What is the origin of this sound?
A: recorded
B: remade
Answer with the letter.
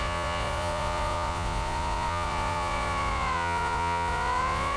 B